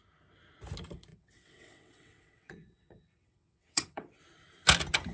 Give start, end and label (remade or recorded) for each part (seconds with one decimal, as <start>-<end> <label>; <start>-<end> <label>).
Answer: 0.0-1.1 recorded; 1.1-4.2 remade; 4.2-5.1 recorded